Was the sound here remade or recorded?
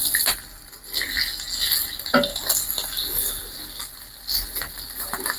recorded